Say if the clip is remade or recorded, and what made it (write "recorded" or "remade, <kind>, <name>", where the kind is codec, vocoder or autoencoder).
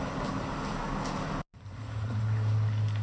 recorded